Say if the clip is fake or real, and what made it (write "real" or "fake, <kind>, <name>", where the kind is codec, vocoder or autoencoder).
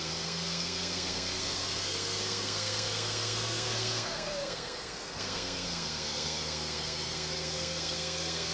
fake, codec, SNAC